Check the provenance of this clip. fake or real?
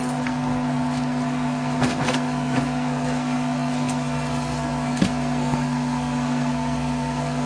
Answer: fake